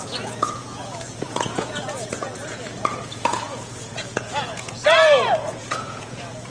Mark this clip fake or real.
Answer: fake